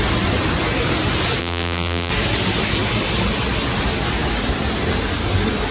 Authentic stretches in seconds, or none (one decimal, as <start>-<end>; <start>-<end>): 0.0-1.4; 2.1-5.7